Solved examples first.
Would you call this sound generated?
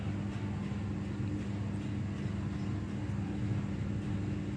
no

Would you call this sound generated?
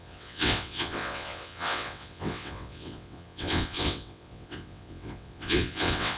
yes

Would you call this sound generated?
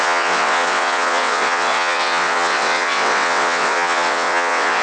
yes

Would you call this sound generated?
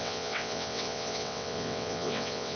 yes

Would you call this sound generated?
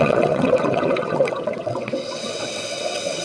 yes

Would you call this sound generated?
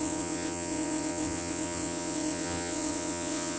yes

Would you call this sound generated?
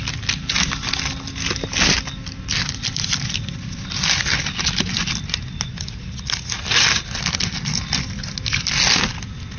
no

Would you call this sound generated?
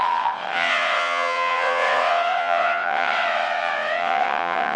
yes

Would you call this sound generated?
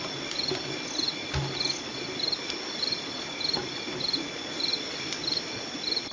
no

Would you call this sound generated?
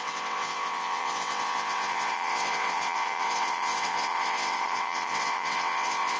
yes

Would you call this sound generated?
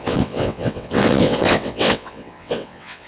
yes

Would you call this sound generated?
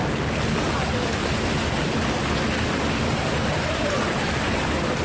no